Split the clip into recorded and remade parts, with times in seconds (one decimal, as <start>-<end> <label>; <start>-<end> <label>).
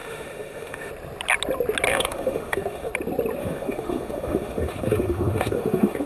0.0-0.9 remade; 0.9-1.9 recorded; 1.9-2.9 remade; 2.9-3.4 recorded; 3.4-6.1 remade